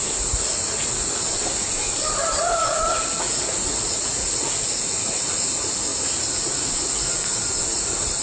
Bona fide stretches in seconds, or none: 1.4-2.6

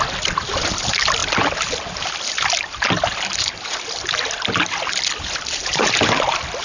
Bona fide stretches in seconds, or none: 0.0-6.6

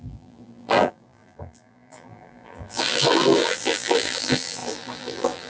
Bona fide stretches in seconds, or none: none

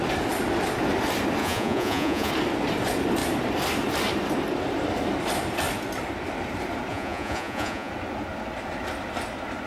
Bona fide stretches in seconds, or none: 0.0-1.4; 2.3-6.9; 7.9-9.7

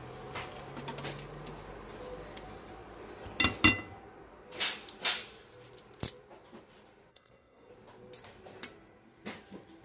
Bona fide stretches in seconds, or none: 0.0-7.1; 7.7-9.8

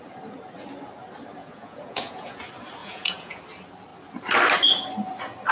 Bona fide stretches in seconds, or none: 0.0-1.4; 2.4-2.8; 3.4-5.5

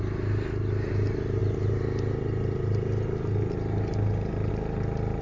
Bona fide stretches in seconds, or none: 0.0-5.2